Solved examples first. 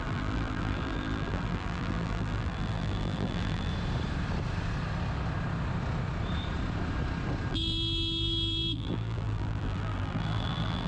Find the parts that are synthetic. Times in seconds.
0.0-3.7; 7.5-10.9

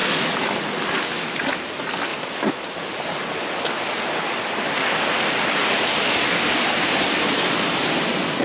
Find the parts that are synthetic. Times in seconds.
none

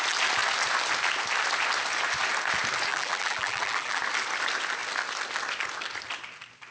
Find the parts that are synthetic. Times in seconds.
2.9-4.0

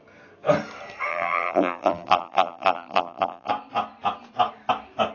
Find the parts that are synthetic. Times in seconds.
1.1-3.5

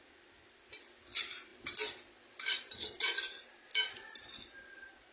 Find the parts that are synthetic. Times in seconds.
none

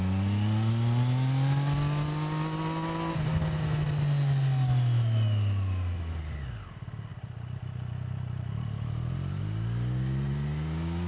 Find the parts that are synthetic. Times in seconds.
7.1-9.4